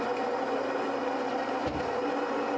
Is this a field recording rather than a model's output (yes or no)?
yes